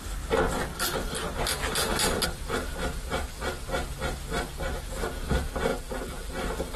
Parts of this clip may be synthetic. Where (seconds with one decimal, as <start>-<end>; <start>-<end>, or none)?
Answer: 5.7-6.3